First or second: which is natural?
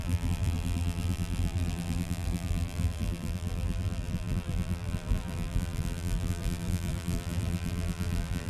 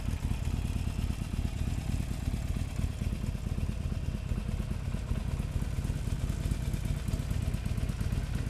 second